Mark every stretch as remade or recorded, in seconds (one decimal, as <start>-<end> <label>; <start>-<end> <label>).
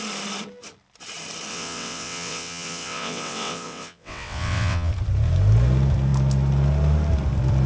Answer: 0.0-1.5 recorded; 1.5-4.9 remade; 4.9-7.7 recorded